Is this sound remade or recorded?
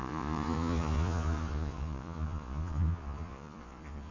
remade